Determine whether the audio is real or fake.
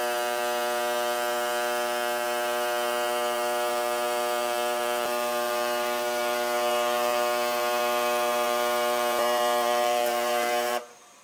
fake